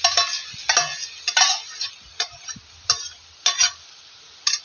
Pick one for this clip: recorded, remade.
recorded